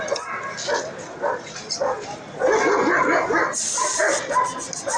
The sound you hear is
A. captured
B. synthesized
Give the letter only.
A